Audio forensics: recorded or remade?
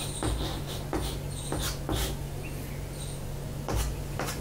recorded